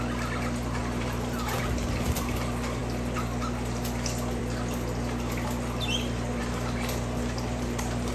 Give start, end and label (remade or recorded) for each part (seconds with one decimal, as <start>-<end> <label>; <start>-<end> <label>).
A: 0.0-0.8 recorded; 0.8-1.6 remade; 1.6-6.4 recorded; 6.4-8.1 remade